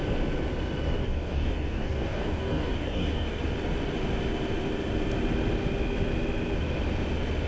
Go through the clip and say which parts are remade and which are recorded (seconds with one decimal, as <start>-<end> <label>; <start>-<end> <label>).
0.0-1.0 recorded; 1.0-3.4 remade; 3.4-7.5 recorded